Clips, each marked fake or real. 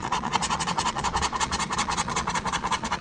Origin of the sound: fake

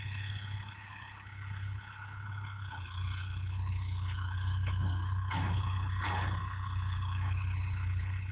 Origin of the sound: fake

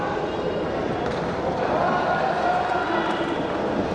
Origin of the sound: fake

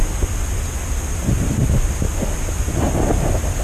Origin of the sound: real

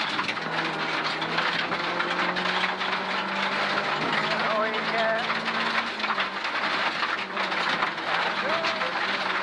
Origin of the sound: real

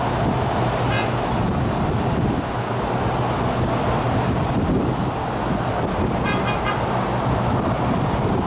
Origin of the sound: real